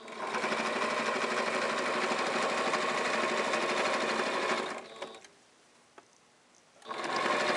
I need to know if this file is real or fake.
real